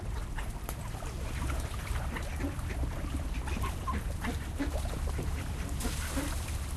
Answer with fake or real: real